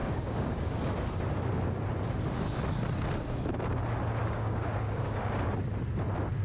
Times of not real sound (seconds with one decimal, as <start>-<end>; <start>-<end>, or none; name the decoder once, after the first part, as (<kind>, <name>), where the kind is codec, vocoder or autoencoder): 0.0-0.8 (codec, DAC); 4.2-5.2